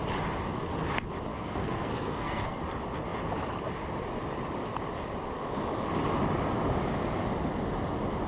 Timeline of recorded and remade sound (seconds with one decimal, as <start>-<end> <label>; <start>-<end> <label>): 0.0-1.3 recorded; 1.3-2.6 remade; 2.6-8.3 recorded